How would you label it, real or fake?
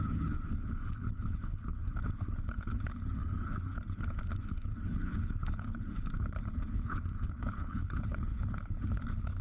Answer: fake